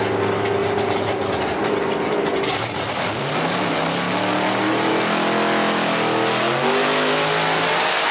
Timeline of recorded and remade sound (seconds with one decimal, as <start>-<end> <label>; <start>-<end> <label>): 0.0-0.6 recorded; 0.6-3.2 remade; 3.2-4.3 recorded; 4.3-4.9 remade; 4.9-8.1 recorded